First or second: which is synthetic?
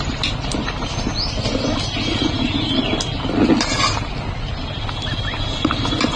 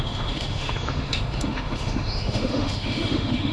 second